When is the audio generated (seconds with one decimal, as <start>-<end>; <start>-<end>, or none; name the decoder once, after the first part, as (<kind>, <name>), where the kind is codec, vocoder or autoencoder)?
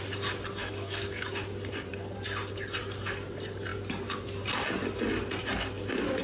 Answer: 0.6-1.3 (autoencoder, DAC-VAE)